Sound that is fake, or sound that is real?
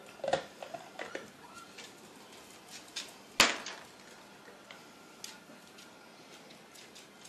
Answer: real